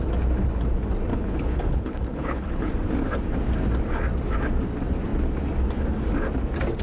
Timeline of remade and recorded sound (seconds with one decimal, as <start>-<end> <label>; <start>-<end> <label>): 0.0-1.1 recorded; 1.1-2.7 remade; 2.7-6.8 recorded